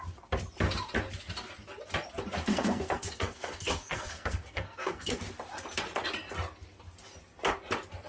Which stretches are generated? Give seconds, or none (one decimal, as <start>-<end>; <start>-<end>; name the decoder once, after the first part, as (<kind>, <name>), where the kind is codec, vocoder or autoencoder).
2.5-5.2 (codec, SNAC)